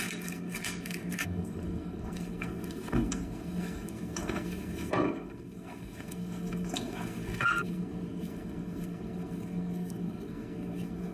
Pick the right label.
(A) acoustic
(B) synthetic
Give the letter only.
B